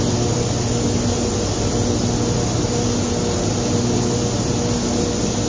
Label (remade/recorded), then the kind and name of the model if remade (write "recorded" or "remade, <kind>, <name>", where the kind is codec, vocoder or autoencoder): recorded